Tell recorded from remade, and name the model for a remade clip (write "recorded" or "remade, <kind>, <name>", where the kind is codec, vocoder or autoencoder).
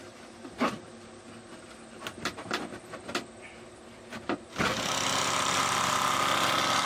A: recorded